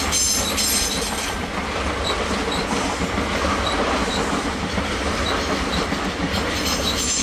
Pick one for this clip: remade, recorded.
recorded